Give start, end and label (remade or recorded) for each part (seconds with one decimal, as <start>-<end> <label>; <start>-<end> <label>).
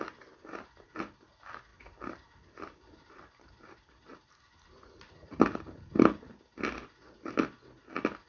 0.0-1.7 recorded; 1.7-3.5 remade; 3.5-8.3 recorded